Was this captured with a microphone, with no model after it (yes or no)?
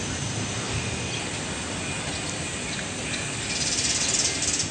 yes